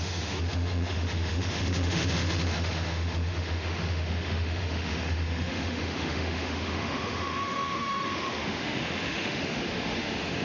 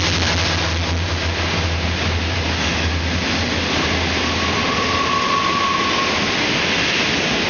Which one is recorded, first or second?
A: second